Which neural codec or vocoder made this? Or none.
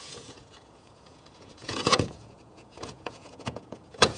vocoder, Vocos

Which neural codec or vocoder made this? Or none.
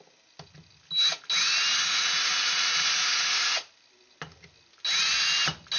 none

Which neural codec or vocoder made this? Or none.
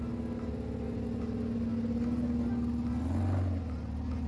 none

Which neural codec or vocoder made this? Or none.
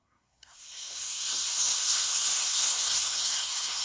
codec, SNAC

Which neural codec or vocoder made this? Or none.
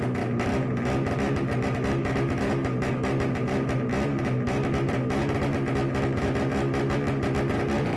none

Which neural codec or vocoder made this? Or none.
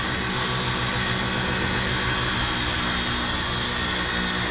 none